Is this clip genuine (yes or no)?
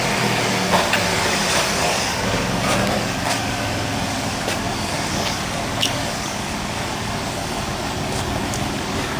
no